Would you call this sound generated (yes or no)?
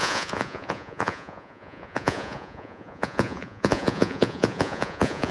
yes